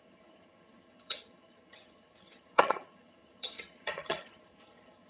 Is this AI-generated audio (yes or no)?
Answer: yes